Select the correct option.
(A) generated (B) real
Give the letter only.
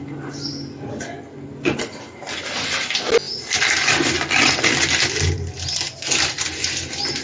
B